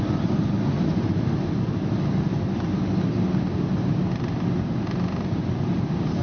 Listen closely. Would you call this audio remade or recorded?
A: recorded